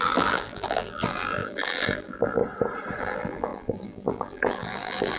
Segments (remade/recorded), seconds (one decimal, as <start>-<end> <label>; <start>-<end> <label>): 0.0-2.4 remade; 2.4-3.0 recorded; 3.0-5.2 remade